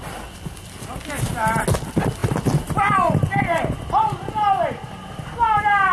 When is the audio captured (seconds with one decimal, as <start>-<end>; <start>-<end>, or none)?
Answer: 0.0-5.9